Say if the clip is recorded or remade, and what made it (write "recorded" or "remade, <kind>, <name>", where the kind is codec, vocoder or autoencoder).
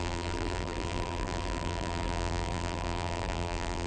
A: remade, vocoder, BigVGAN v2